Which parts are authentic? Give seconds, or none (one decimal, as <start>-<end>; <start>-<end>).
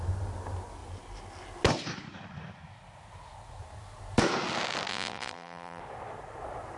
0.0-4.9; 5.8-6.8